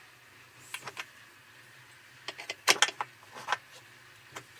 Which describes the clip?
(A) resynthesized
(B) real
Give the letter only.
B